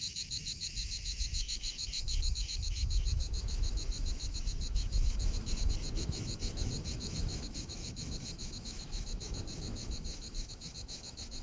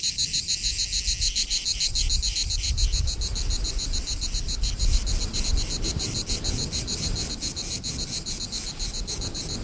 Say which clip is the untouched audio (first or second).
second